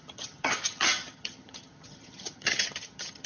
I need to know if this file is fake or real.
fake